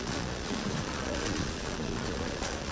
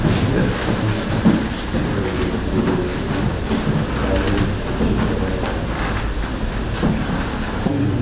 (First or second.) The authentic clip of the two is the second